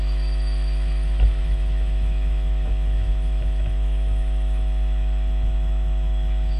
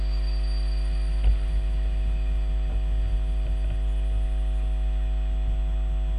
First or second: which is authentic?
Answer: second